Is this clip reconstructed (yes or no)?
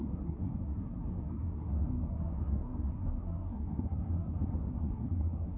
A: yes